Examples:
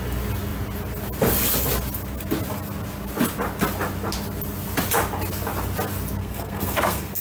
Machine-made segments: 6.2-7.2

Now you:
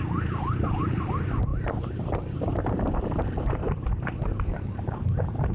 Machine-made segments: 0.0-5.5

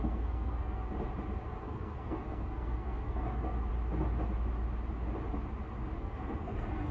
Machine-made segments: 0.0-0.8; 1.6-3.7; 6.0-6.9